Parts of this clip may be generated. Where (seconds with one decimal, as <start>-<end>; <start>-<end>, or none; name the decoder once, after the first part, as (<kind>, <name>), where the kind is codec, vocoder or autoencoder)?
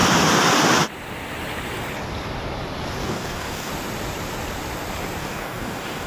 3.0-3.7 (codec, DAC); 5.2-6.1